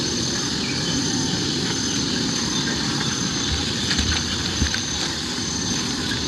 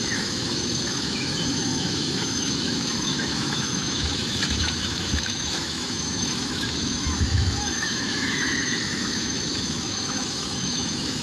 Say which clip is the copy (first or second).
second